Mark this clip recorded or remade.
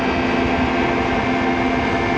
recorded